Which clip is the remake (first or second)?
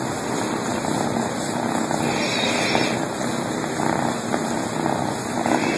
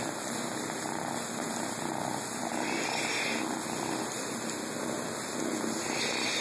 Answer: first